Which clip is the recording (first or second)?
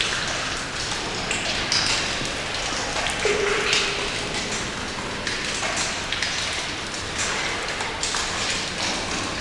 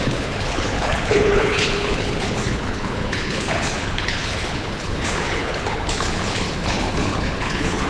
first